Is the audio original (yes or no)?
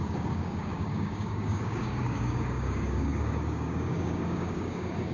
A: no